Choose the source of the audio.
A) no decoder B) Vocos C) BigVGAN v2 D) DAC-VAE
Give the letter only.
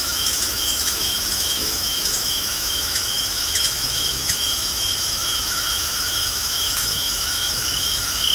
D